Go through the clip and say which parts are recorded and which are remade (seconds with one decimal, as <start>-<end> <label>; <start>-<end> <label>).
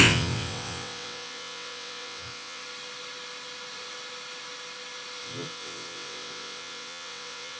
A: 0.0-2.6 remade; 2.6-5.2 recorded; 5.2-7.6 remade